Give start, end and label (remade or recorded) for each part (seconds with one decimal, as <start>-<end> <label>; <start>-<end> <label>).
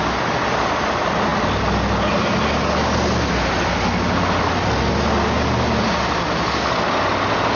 0.0-7.6 recorded